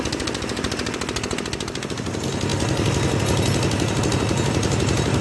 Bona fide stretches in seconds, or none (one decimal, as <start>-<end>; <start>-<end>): 0.0-5.2